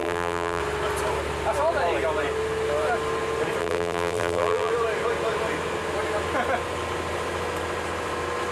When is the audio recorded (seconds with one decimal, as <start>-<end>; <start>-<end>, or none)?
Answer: 0.6-3.6; 4.7-8.5